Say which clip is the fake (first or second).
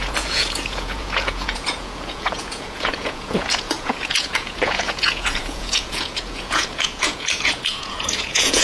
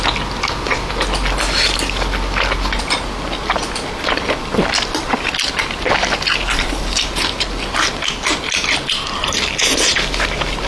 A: first